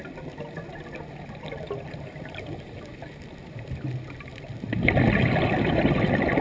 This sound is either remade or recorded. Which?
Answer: recorded